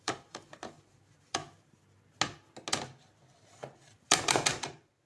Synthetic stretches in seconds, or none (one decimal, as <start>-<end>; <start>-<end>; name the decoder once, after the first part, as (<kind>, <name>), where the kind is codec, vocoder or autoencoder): 0.0-1.4 (vocoder, BigVGAN v2); 3.4-5.1